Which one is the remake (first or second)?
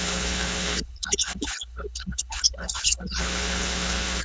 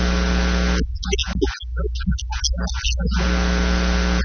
first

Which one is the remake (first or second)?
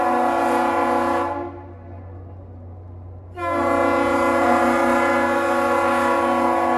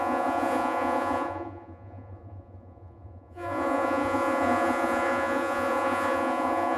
second